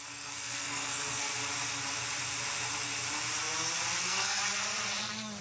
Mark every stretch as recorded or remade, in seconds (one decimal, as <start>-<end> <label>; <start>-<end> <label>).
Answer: 0.0-1.3 remade; 1.3-4.0 recorded; 4.0-4.4 remade; 4.4-5.4 recorded